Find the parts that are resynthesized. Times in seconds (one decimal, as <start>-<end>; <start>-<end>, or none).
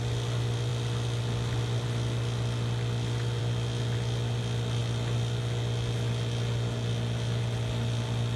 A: none